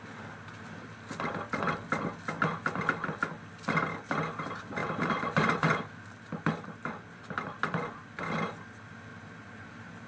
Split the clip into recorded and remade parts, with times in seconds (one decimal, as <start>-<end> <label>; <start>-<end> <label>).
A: 0.0-4.8 recorded; 4.8-5.8 remade; 5.8-9.1 recorded; 9.1-9.7 remade; 9.7-10.1 recorded